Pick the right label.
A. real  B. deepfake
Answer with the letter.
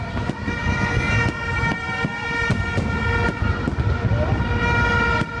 A